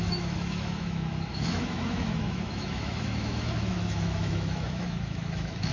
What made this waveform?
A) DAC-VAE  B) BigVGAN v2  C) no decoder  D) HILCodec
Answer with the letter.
A